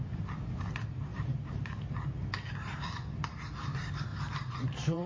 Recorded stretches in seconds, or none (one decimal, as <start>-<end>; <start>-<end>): 0.0-1.1; 1.8-4.1